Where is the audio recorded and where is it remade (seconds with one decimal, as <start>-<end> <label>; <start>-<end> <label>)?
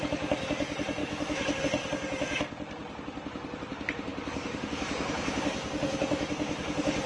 0.0-1.0 recorded; 1.0-1.6 remade; 1.6-4.1 recorded; 4.1-7.1 remade